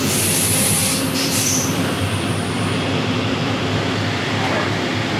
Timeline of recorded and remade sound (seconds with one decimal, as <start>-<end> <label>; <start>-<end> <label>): 0.0-0.8 recorded; 0.8-3.9 remade; 3.9-5.2 recorded